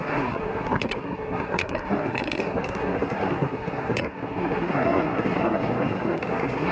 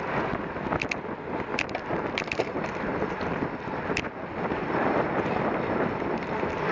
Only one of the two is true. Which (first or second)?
second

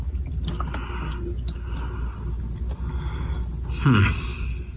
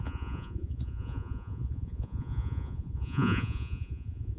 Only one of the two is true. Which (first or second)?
first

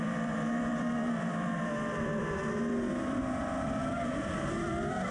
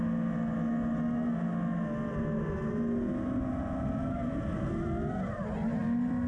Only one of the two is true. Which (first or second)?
second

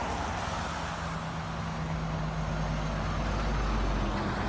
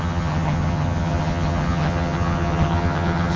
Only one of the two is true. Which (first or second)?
first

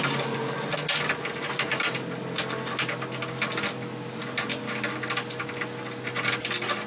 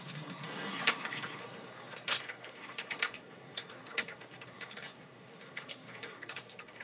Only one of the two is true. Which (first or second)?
first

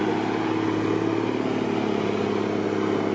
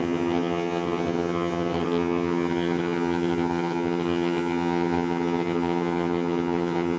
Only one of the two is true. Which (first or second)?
first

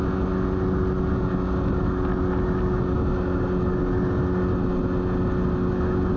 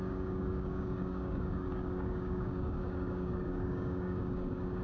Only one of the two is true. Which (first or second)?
first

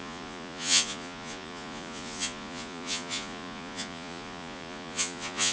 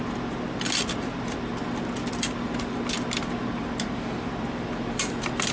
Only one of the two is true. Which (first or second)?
second